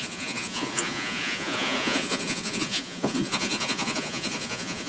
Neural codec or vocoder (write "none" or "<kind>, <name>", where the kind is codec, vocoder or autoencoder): vocoder, Vocos